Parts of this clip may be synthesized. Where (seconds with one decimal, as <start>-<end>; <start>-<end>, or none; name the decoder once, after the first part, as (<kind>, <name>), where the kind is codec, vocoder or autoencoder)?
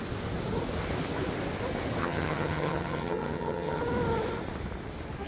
2.0-3.8 (vocoder, HiFi-GAN)